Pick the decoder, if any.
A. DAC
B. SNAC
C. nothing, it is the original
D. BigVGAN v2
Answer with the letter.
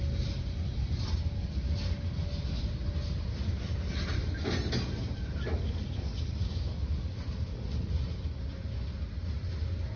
C